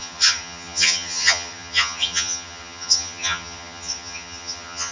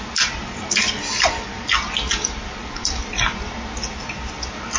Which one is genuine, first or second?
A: second